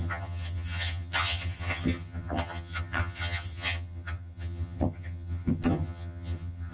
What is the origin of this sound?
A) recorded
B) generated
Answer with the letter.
B